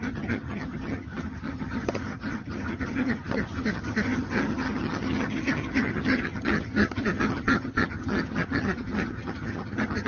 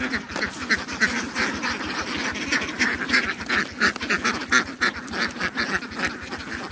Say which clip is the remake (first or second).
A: first